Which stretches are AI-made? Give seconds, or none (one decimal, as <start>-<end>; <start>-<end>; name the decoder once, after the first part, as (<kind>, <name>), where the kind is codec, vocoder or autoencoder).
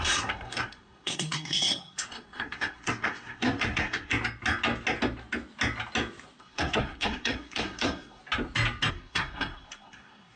0.0-4.1 (codec, SNAC); 6.4-8.2; 8.9-10.4